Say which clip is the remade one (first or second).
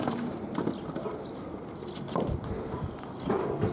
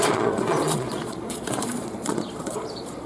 second